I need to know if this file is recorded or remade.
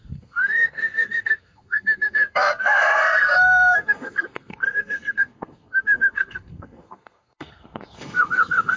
remade